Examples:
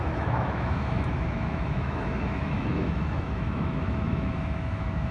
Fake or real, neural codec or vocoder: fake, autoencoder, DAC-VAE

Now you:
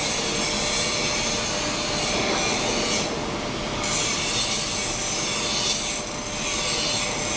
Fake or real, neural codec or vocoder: real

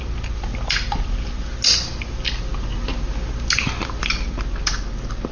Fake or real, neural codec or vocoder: real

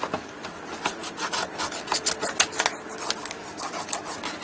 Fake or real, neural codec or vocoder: real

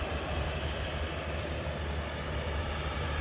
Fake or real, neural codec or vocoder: real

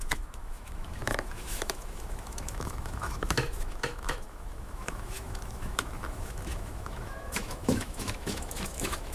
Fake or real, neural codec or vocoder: fake, autoencoder, DAC-VAE